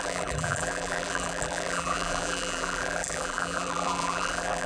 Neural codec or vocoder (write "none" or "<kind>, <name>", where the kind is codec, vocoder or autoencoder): vocoder, BigVGAN v2